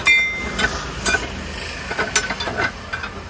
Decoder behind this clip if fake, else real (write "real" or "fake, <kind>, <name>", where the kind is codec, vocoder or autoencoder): real